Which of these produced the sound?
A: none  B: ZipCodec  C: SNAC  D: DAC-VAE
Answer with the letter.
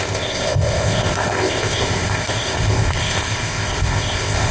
B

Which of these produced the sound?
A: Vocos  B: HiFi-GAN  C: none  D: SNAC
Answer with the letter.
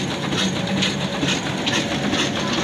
C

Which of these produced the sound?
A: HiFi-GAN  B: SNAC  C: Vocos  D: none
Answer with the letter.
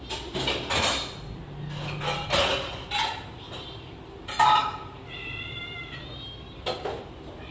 D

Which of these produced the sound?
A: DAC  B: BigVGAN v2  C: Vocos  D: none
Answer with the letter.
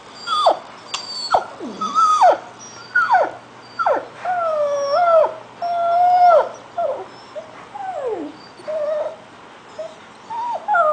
D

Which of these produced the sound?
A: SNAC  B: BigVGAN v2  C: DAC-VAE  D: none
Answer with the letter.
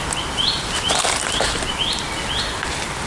D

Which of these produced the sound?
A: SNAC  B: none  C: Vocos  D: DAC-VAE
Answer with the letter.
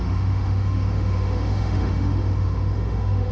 D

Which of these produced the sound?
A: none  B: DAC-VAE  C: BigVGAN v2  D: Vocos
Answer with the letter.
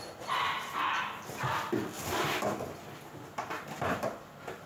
A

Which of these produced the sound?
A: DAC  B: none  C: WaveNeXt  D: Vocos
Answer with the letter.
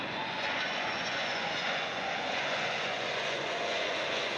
D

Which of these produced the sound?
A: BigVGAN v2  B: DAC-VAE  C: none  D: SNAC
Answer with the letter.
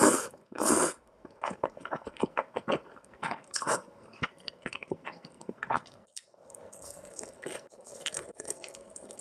D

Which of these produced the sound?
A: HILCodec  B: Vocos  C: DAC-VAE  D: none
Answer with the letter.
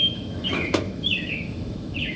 C